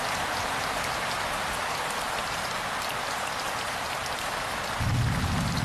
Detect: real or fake real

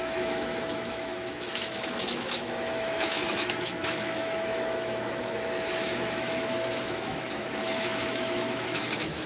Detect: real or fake fake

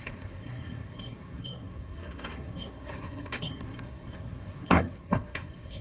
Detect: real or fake fake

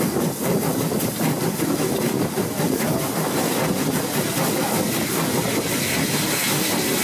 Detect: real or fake real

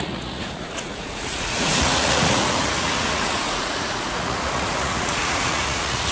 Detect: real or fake fake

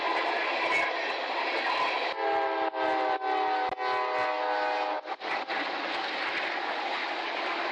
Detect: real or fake real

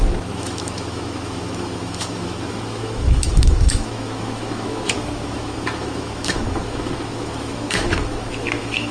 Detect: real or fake fake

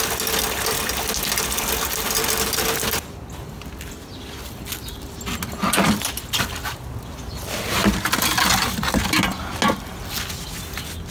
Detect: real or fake real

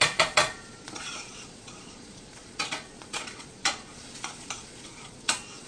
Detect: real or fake fake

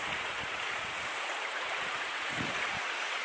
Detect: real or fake fake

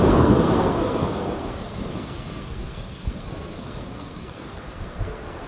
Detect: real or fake fake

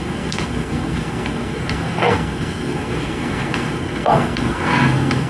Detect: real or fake fake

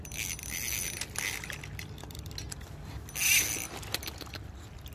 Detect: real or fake real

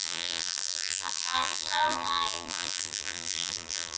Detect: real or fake fake